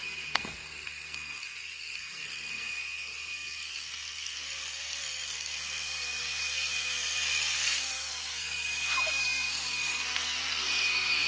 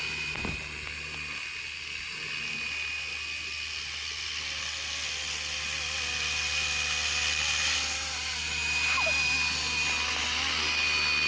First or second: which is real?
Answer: second